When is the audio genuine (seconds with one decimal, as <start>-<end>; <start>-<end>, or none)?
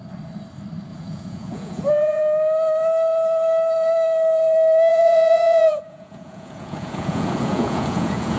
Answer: 0.0-0.9; 2.2-4.9